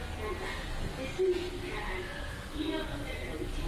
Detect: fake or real real